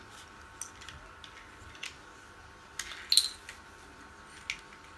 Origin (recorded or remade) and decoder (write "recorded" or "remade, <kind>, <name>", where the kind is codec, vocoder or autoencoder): recorded